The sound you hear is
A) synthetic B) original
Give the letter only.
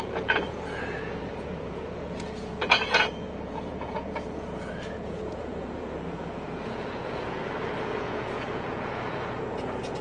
A